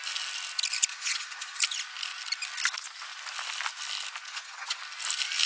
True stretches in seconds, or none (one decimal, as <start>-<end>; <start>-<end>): 0.0-0.9; 1.6-4.3; 4.8-5.5